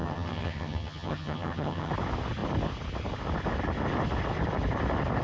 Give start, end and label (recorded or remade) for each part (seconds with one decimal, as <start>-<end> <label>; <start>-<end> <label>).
0.0-1.9 remade; 1.9-5.2 recorded